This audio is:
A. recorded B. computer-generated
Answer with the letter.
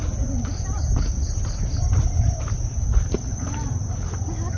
A